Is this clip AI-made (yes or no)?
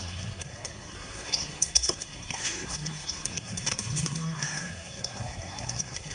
yes